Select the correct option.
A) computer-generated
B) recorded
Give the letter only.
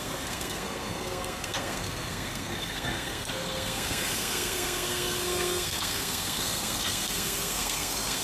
A